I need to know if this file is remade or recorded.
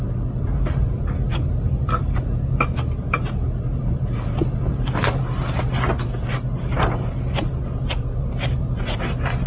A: recorded